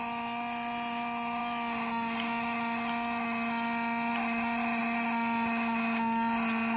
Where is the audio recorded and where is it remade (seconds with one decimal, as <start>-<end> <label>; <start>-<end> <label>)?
0.0-6.8 recorded